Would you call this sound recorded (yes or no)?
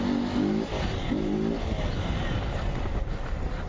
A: yes